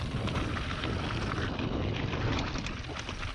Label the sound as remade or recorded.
recorded